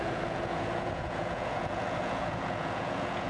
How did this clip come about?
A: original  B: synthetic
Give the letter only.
B